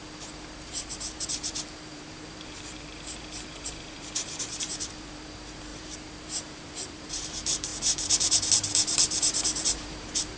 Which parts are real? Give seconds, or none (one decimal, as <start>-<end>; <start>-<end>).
0.0-0.6